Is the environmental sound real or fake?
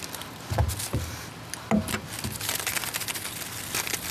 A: real